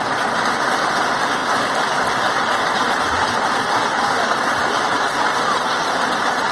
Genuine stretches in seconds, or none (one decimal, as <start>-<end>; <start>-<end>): 0.0-6.5